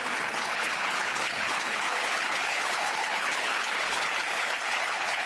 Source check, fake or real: fake